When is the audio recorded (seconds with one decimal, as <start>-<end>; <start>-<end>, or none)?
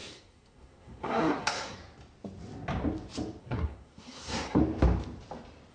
1.8-3.4; 4.6-5.7